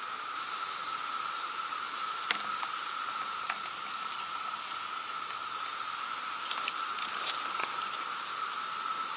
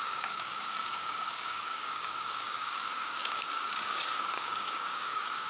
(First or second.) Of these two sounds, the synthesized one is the second